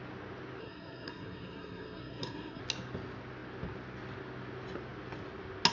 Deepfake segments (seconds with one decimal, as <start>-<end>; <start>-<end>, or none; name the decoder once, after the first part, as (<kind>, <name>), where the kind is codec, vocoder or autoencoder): 0.6-2.6 (codec, SNAC)